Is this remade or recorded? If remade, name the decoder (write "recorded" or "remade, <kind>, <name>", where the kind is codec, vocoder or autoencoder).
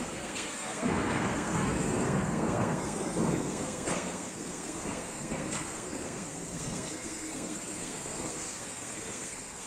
remade, codec, SNAC